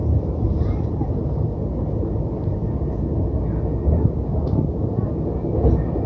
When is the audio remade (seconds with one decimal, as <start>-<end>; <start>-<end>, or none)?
0.0-3.4